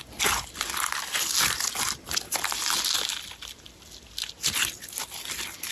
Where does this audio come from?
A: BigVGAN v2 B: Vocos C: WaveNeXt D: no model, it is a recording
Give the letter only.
D